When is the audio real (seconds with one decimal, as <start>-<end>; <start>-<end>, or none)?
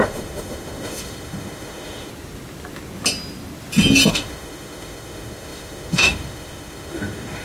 2.1-4.1